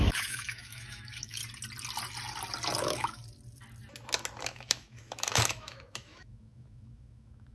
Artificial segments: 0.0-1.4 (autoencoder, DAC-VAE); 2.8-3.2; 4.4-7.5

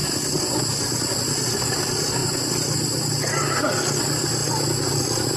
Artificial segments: none

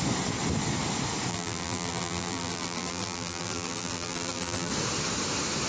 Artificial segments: 1.3-4.7 (vocoder, BigVGAN v2)

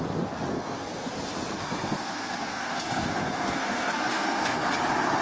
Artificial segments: 0.5-1.1 (codec, SNAC); 1.6-4.7

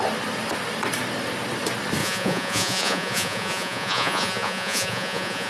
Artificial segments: 2.0-5.5 (vocoder, Vocos)

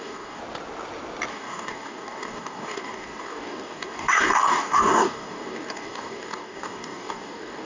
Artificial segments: 0.0-0.4 (codec, DAC); 1.3-7.7

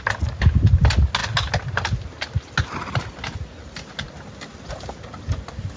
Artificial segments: none